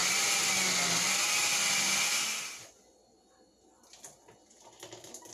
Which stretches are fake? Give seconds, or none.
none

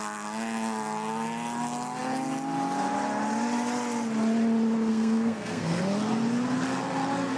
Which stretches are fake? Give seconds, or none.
4.9-5.8 (codec, SNAC)

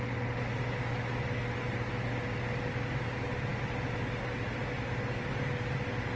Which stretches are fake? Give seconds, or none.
none

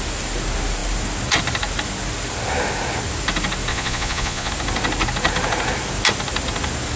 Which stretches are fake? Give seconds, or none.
3.7-4.5 (vocoder, Vocos)

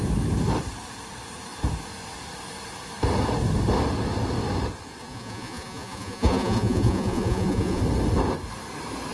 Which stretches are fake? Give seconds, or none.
5.0-7.8 (vocoder, Vocos)

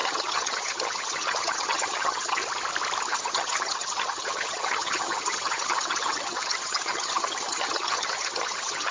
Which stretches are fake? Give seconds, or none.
0.0-2.4 (vocoder, HiFi-GAN); 3.1-8.9

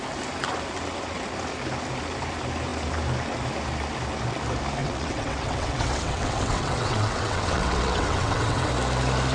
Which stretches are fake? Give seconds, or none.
4.8-8.7 (vocoder, WaveNeXt)

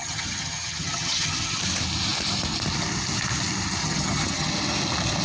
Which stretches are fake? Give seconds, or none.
0.0-1.6 (vocoder, HiFi-GAN); 3.8-4.5